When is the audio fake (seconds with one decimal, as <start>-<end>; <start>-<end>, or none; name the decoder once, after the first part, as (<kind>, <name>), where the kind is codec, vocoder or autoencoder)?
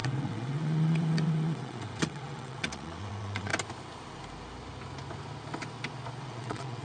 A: 0.0-3.5 (vocoder, WaveNeXt); 6.2-6.8